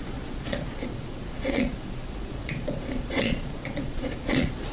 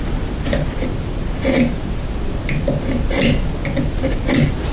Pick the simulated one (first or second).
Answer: first